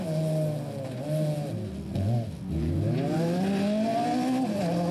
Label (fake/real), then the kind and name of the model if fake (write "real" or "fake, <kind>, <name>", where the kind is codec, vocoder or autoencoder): real